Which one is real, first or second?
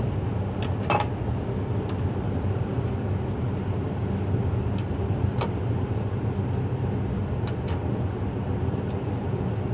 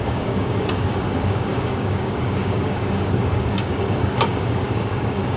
first